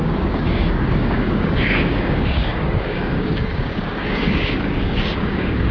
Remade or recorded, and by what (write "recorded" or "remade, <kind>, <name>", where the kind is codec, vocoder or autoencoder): remade, codec, DAC